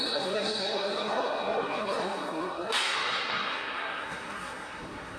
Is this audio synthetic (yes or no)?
yes